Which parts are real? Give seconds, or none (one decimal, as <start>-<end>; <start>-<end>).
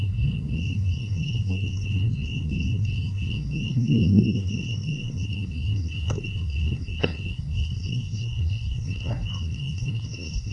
none